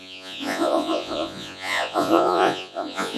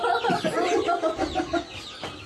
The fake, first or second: first